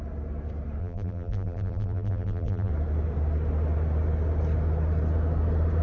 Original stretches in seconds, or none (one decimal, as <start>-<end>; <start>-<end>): 0.0-0.8; 2.7-5.8